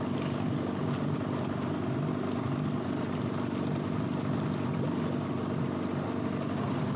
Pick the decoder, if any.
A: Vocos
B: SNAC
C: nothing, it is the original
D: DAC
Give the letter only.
C